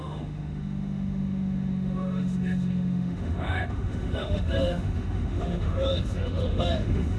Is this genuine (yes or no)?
no